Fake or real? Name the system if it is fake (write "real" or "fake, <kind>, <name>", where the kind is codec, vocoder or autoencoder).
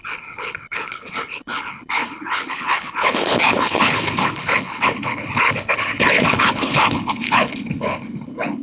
fake, codec, HILCodec